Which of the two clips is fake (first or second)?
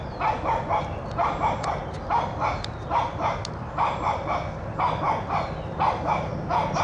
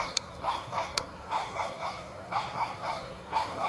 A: second